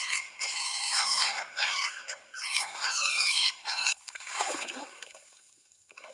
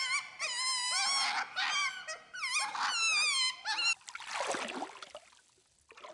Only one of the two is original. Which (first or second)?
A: second